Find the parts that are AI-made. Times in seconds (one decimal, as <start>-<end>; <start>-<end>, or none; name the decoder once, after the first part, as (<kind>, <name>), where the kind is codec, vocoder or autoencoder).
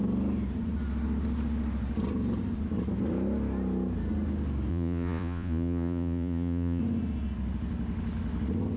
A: 4.7-6.8 (vocoder, Vocos)